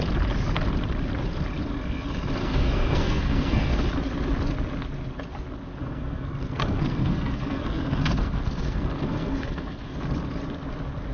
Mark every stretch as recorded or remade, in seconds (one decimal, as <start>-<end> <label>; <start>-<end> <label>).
0.0-2.4 recorded; 2.4-3.8 remade; 3.8-5.8 recorded; 5.8-10.0 remade; 10.0-11.1 recorded